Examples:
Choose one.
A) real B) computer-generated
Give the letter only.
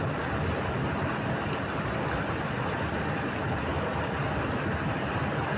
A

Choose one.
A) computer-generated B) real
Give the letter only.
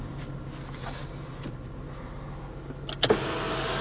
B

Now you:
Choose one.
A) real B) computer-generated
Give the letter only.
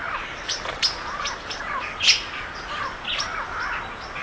A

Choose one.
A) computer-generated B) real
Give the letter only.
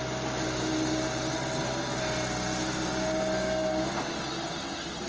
B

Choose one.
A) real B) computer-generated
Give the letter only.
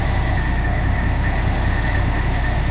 B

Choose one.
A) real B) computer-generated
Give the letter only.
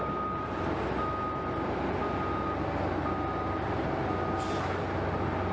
A